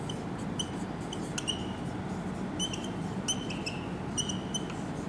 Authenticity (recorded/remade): recorded